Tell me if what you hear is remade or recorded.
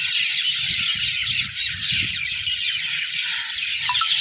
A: remade